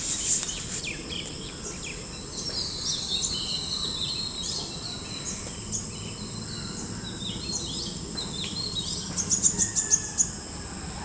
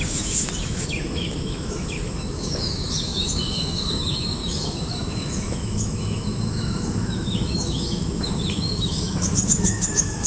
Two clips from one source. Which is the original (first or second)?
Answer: first